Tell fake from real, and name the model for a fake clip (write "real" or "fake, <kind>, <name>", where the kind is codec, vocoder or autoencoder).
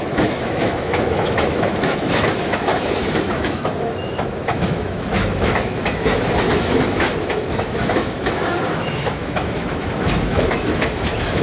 fake, autoencoder, DAC-VAE